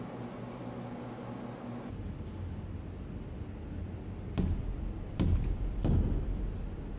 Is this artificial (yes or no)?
no